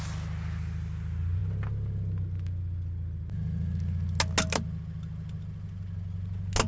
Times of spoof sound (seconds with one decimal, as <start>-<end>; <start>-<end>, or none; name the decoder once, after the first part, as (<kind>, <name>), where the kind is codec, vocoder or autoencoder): none